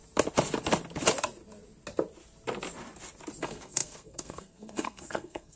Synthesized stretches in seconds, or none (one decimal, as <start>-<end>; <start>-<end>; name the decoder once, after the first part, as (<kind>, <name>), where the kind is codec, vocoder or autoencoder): 3.4-5.6 (codec, SNAC)